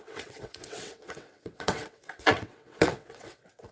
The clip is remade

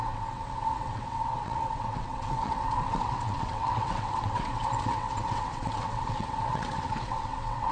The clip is remade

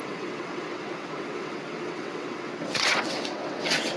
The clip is remade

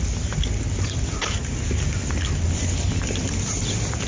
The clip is recorded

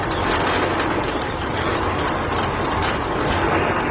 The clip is recorded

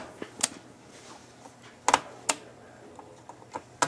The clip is recorded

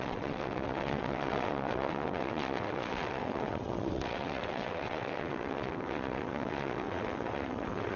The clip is remade